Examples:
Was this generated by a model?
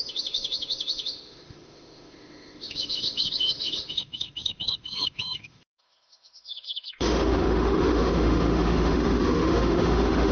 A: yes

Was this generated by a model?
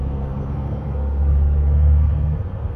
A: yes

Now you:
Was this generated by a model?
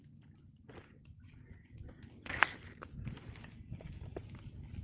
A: no